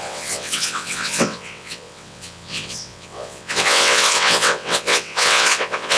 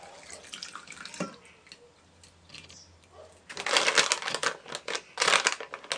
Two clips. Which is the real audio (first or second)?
second